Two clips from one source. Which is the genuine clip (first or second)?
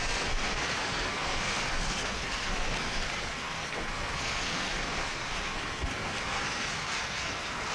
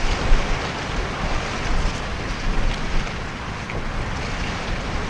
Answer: second